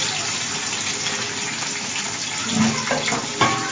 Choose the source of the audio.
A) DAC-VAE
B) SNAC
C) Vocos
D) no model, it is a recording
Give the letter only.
D